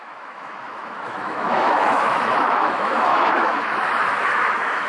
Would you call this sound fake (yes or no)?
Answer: yes